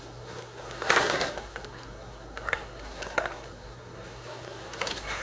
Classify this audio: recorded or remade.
remade